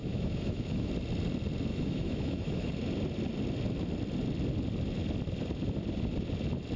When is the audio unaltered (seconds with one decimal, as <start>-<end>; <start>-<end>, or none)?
0.9-1.7; 2.7-6.8